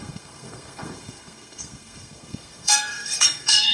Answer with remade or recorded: remade